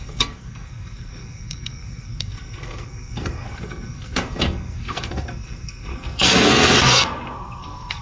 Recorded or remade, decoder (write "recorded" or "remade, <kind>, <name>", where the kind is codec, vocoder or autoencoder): remade, codec, SNAC